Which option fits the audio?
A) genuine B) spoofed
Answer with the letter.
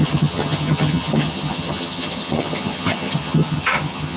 B